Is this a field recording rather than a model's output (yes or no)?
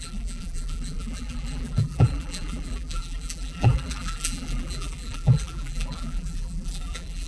no